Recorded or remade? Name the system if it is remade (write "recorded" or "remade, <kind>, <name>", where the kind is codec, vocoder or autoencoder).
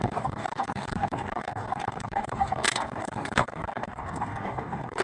remade, codec, DAC